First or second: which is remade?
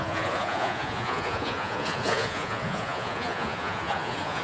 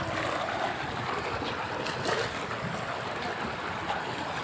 first